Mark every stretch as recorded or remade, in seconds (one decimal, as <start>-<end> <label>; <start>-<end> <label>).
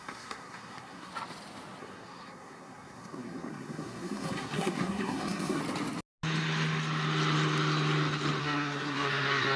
0.0-1.1 remade; 1.1-1.8 recorded; 1.8-5.6 remade; 5.6-8.4 recorded; 8.4-9.6 remade